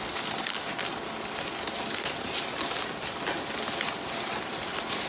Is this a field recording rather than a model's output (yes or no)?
yes